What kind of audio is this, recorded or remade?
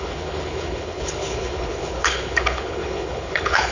remade